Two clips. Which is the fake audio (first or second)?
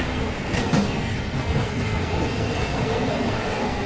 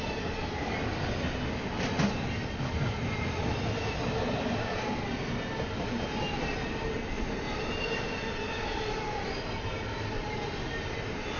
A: first